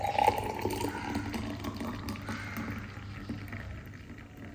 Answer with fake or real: real